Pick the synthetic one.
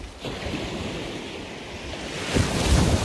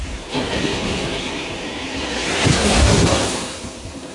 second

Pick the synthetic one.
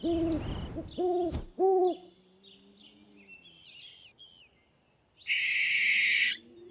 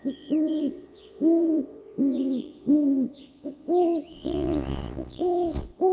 second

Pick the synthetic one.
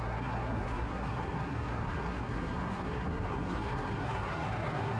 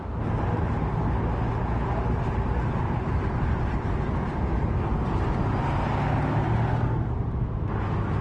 first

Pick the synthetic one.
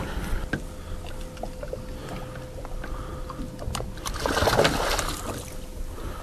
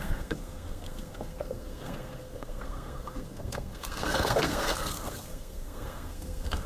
second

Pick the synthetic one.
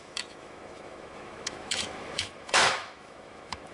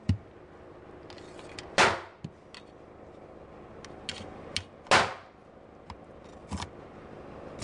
first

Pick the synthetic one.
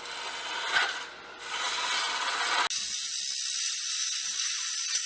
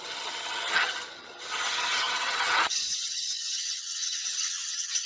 second